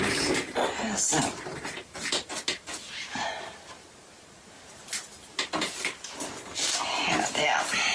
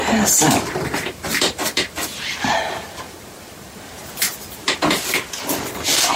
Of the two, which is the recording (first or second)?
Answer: first